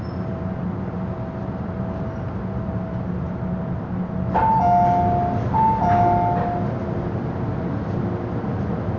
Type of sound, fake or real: real